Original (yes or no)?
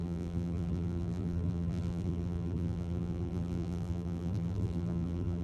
no